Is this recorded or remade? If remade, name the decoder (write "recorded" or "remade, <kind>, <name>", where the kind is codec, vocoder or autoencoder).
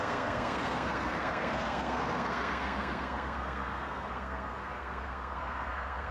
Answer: remade, codec, SNAC